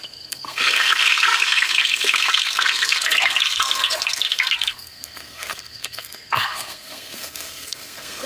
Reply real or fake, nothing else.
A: fake